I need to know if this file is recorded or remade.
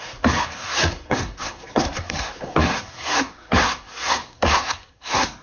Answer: remade